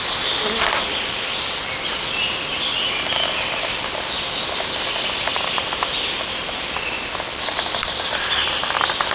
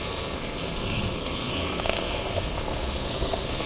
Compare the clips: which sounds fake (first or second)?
second